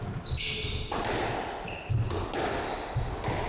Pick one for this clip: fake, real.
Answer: real